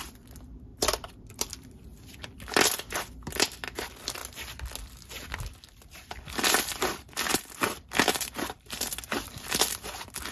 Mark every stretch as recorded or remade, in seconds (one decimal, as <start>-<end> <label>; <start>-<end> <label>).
0.0-4.2 remade; 4.2-6.2 recorded; 6.2-10.3 remade